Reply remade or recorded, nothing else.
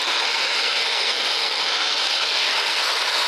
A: remade